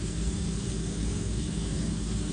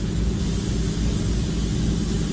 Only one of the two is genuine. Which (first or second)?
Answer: second